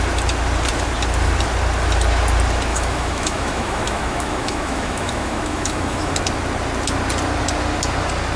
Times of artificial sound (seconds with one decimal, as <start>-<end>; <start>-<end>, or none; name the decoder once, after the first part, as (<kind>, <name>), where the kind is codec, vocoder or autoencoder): 2.7-6.1 (autoencoder, DAC-VAE)